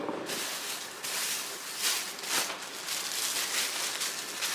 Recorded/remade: recorded